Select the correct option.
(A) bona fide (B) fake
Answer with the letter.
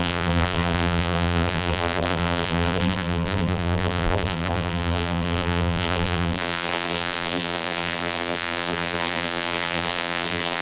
B